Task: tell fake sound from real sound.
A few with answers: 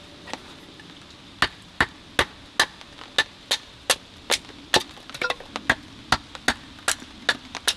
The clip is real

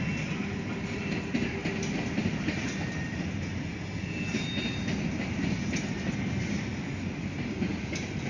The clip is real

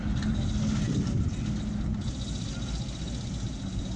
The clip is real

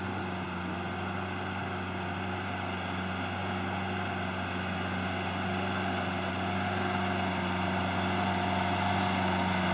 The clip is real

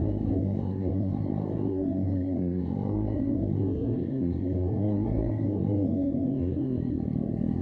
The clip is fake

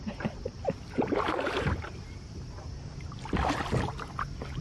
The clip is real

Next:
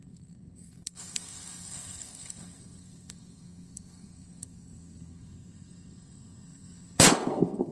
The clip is fake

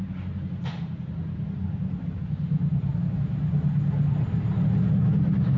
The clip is real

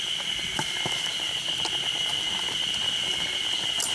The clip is real